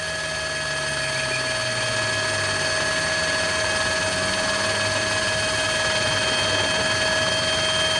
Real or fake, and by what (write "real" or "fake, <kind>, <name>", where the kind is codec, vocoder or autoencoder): real